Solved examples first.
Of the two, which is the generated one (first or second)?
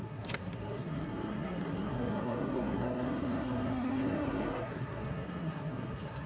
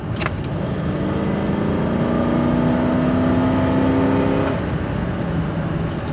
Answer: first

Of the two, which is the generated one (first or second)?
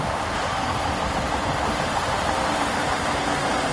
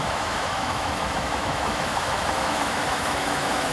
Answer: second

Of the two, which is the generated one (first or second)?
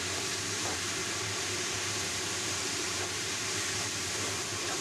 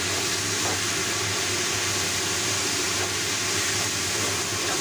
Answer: first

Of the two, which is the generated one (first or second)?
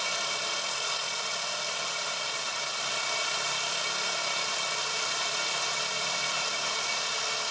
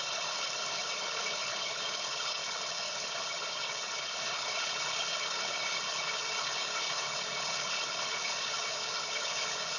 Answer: second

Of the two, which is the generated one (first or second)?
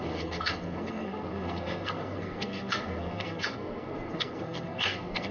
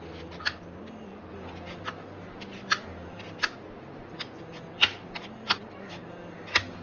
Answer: first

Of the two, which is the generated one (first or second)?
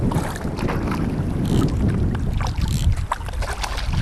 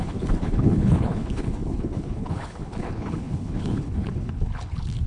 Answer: second